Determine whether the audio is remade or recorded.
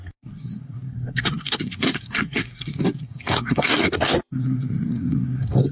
remade